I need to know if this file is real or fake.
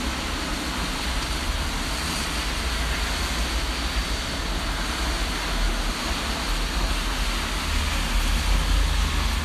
real